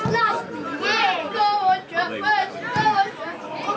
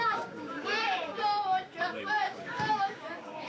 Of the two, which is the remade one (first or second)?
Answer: second